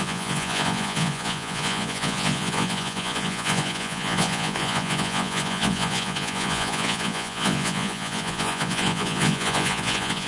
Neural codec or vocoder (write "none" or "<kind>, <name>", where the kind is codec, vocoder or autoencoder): vocoder, Vocos